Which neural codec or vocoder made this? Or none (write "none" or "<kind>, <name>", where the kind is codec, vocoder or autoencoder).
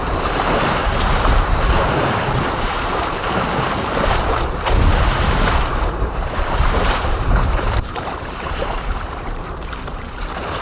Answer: vocoder, BigVGAN v2